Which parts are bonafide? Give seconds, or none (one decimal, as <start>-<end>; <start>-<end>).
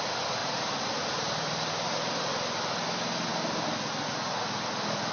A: 0.0-0.4; 1.9-5.1